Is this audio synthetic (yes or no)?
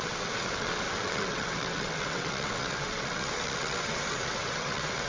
yes